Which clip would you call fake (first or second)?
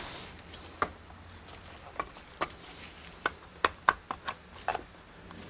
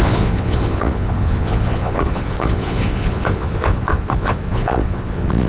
second